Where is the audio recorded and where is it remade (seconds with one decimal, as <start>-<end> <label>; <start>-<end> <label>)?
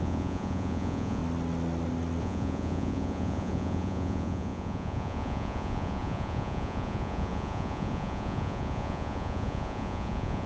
0.0-1.2 remade; 1.2-2.2 recorded; 2.2-10.5 remade